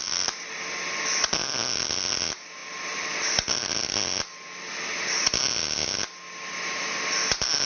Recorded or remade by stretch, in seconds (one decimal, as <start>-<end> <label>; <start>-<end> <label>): 0.0-7.7 recorded